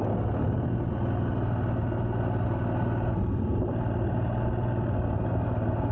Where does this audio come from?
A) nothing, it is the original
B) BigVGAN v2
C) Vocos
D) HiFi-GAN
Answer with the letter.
A